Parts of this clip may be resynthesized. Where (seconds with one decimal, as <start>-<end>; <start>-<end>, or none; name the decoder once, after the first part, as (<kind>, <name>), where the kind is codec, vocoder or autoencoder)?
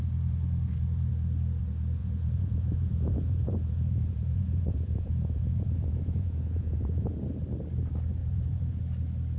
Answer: 2.0-7.1 (vocoder, Vocos); 8.2-8.8